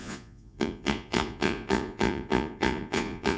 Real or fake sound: fake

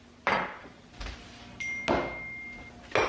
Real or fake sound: real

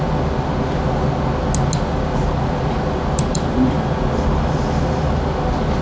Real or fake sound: real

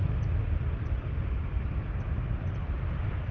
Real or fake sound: real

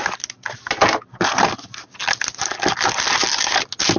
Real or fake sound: real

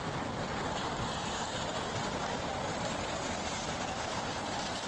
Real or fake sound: real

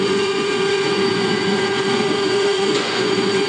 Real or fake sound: fake